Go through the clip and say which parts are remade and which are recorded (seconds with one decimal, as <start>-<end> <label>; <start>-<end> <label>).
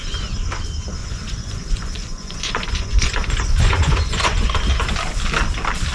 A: 0.0-1.0 recorded; 1.0-4.5 remade; 4.5-5.9 recorded